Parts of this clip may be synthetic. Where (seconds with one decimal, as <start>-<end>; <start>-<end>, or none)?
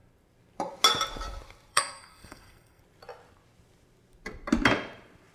1.7-2.8